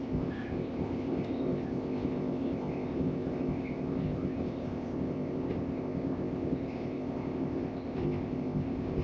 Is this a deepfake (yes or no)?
yes